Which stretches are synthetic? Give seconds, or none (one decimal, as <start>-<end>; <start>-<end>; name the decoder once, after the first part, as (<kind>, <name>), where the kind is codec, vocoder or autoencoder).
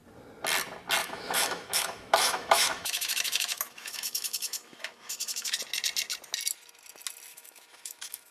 1.0-5.6 (autoencoder, DAC-VAE); 7.3-8.3